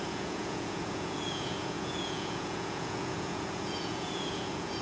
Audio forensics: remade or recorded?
remade